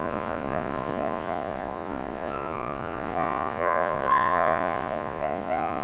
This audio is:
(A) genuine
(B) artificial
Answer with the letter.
B